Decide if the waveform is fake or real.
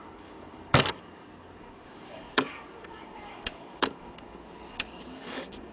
fake